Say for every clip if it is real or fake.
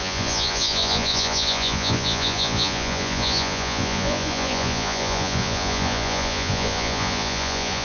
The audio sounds fake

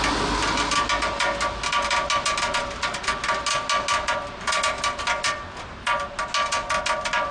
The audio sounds real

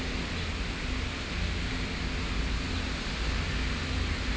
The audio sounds real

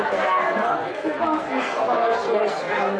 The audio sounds fake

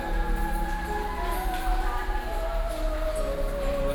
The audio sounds real